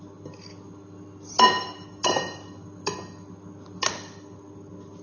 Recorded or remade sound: recorded